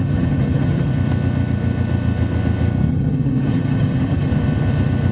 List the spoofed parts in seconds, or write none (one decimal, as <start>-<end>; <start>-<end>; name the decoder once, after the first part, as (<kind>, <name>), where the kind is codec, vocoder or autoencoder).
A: 0.0-0.9 (vocoder, HiFi-GAN); 2.9-4.3